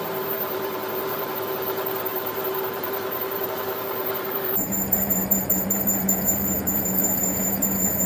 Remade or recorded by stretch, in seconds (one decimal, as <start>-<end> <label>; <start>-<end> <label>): 0.0-8.1 remade